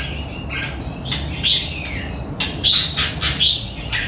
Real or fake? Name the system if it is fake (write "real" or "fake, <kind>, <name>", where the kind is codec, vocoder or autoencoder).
real